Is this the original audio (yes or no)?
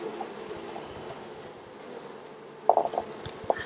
yes